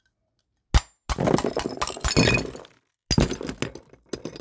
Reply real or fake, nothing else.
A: real